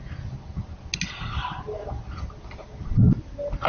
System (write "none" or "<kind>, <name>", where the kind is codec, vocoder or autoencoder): none